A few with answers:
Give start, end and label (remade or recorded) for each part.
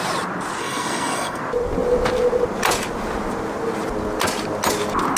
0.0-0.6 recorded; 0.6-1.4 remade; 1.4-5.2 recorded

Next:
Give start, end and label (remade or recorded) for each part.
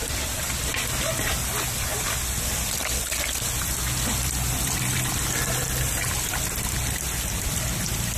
0.0-8.2 recorded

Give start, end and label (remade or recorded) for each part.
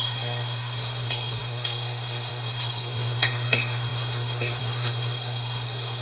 0.0-6.0 remade